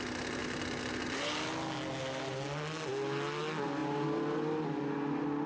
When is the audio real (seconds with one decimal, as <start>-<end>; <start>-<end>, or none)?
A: 0.0-5.5